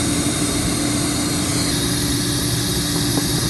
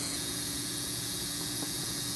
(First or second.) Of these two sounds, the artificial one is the second